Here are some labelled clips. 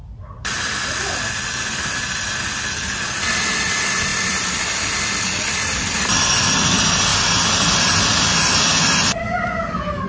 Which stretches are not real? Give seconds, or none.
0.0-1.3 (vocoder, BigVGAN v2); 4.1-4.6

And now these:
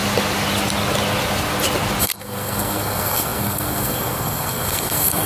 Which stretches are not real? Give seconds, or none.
2.0-5.3 (codec, SNAC)